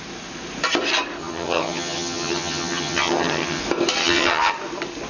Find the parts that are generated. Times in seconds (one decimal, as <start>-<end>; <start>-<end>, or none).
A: 1.2-3.6; 4.0-4.5